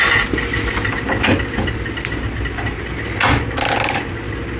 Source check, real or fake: real